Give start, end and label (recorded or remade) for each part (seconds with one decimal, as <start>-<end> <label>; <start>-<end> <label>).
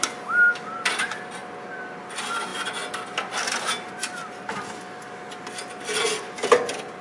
0.0-7.0 recorded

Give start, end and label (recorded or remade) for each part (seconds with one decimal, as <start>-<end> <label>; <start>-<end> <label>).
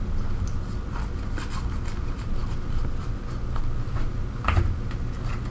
0.0-5.5 recorded